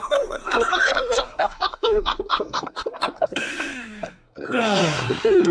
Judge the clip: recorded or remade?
remade